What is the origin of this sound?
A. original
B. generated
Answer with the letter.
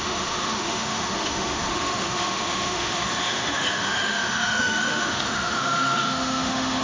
B